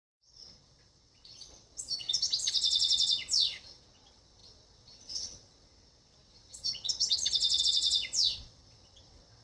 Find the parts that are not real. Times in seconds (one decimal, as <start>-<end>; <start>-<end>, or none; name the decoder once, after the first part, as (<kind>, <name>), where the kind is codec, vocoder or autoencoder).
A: 0.0-9.4 (vocoder, WaveNeXt)